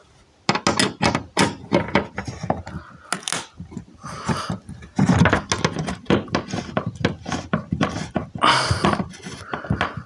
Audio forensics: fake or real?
real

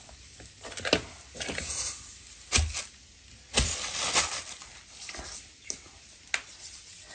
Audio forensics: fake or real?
real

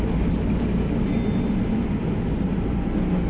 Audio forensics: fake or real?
real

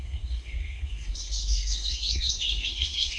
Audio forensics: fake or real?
fake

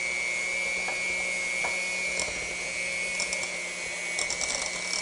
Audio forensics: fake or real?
real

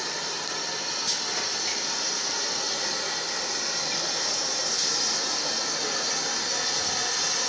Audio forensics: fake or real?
real